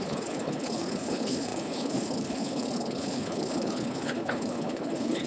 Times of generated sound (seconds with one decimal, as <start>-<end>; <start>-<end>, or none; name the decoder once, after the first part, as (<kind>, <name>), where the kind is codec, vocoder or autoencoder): 0.0-5.3 (codec, HILCodec)

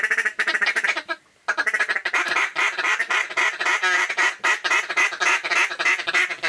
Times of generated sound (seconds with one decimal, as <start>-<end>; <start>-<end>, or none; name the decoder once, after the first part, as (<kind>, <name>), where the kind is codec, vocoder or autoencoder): 2.0-4.1 (vocoder, BigVGAN v2)

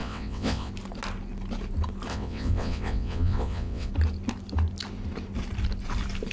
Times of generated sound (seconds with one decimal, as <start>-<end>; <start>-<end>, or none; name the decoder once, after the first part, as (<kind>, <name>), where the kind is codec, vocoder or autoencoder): 0.0-0.7 (vocoder, WaveNeXt); 2.1-3.9

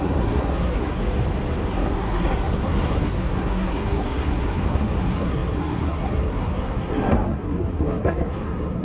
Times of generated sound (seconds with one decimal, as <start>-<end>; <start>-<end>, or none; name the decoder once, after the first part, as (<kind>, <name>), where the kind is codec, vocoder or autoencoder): 0.0-1.0 (codec, SNAC); 1.7-8.8

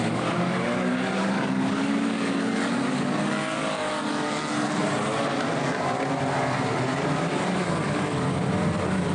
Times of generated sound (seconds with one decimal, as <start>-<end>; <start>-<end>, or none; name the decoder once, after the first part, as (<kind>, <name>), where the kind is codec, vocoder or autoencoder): 0.0-4.4 (codec, DAC); 7.6-8.4

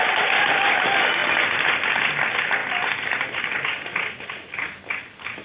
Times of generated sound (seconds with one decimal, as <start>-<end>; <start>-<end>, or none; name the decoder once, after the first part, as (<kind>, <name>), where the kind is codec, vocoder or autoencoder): none

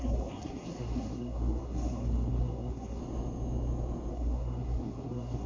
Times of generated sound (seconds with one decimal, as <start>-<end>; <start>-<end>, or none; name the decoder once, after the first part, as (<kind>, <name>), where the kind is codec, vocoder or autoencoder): 0.0-3.0 (codec, SNAC); 4.1-5.5

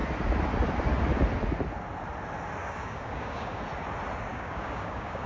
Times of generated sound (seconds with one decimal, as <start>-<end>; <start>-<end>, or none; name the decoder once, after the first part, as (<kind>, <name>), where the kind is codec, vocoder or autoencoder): 2.6-3.6 (codec, DAC); 4.3-5.3